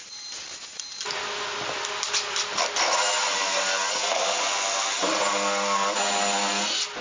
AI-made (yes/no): no